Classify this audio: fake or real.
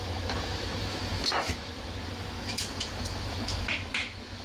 fake